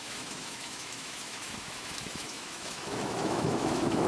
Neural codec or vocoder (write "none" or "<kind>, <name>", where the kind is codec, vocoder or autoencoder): autoencoder, DAC-VAE